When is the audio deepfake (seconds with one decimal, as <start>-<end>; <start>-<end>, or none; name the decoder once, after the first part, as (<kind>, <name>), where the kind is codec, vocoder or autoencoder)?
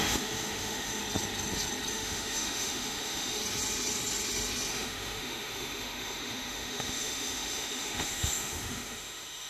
0.0-1.0 (autoencoder, DAC-VAE); 1.9-3.4; 4.7-9.5